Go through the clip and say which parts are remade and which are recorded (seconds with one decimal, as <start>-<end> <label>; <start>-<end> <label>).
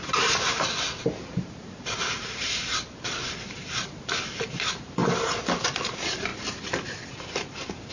0.0-5.0 remade; 5.0-5.7 recorded; 5.7-6.3 remade; 6.3-7.9 recorded